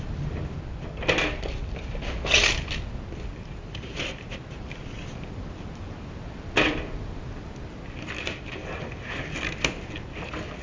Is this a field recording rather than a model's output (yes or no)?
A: yes